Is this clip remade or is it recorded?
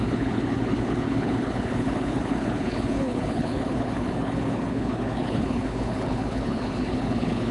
remade